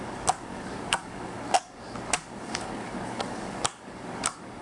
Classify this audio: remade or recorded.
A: remade